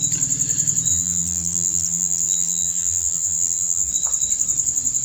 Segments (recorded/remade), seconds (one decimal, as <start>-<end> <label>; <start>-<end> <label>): 0.0-0.9 recorded; 0.9-3.9 remade; 3.9-5.0 recorded